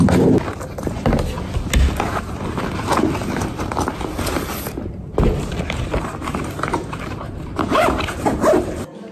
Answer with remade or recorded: recorded